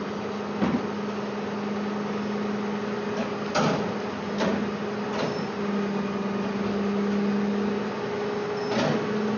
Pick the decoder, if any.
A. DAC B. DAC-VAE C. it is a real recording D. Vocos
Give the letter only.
C